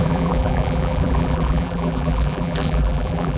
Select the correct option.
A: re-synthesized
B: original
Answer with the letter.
A